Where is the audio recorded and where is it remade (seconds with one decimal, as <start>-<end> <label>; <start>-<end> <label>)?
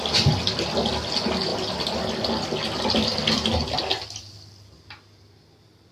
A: 0.0-5.9 recorded